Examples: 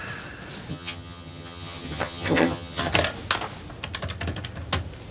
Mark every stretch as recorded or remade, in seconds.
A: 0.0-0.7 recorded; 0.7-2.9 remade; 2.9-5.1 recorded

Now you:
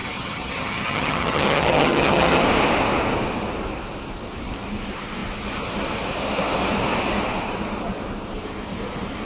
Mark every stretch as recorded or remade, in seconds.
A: 0.0-2.4 remade; 2.4-9.3 recorded

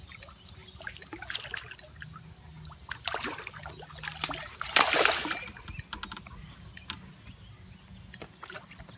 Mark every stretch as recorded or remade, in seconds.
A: 0.0-9.0 recorded

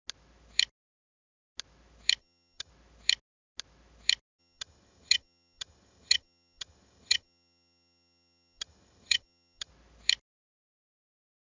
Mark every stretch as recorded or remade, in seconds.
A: 0.0-2.2 recorded; 2.2-2.7 remade; 2.7-4.4 recorded; 4.4-9.7 remade; 9.7-11.4 recorded

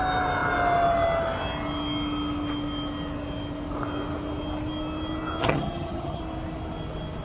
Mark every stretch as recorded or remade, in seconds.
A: 0.0-5.4 recorded; 5.4-6.2 remade; 6.2-7.2 recorded

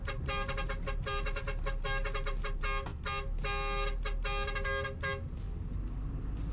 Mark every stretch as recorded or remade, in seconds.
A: 0.0-6.5 recorded

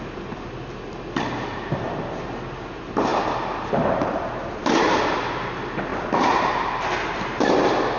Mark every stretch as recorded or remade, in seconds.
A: 0.0-8.0 recorded

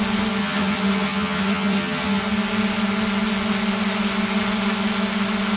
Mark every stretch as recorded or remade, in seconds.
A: 0.0-0.4 recorded; 0.4-2.2 remade; 2.2-5.6 recorded